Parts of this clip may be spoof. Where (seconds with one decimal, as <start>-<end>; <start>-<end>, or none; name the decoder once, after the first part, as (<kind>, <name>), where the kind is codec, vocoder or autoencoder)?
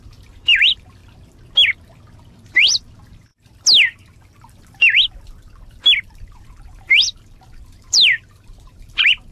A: 0.0-1.0 (vocoder, BigVGAN v2); 2.2-3.3; 6.1-9.3